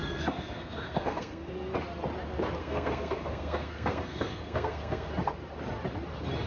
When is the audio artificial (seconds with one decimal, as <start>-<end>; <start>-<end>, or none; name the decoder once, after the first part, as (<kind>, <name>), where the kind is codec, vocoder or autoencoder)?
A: 0.0-1.5 (codec, SNAC); 2.6-5.1